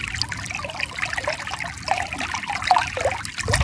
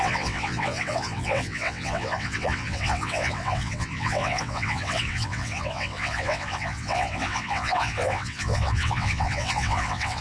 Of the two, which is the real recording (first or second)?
first